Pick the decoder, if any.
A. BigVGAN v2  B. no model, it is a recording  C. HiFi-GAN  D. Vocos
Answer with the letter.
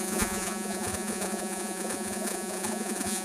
D